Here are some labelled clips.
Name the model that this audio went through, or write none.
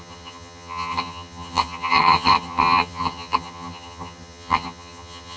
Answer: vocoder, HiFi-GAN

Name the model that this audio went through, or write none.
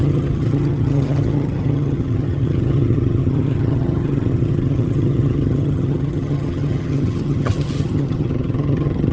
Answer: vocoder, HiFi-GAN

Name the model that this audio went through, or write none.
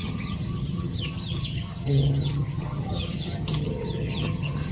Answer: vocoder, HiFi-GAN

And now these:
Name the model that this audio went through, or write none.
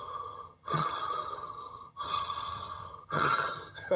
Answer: vocoder, HiFi-GAN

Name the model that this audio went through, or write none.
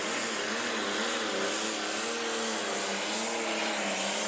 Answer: none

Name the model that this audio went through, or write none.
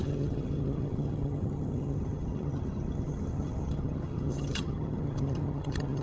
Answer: vocoder, HiFi-GAN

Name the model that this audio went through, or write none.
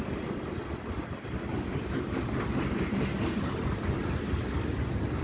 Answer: none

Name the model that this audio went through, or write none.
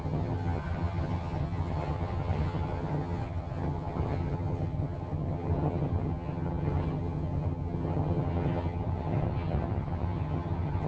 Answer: vocoder, HiFi-GAN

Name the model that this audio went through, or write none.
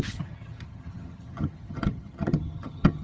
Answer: vocoder, HiFi-GAN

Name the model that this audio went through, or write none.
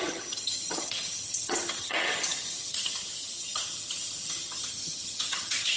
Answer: vocoder, HiFi-GAN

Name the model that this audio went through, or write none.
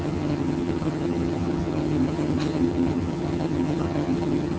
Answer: vocoder, HiFi-GAN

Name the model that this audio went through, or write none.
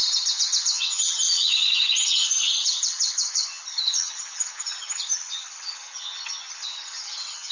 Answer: vocoder, HiFi-GAN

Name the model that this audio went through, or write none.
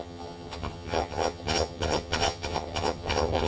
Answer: vocoder, HiFi-GAN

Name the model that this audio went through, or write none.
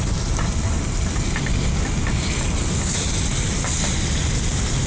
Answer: none